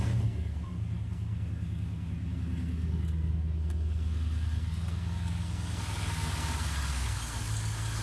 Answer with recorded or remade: remade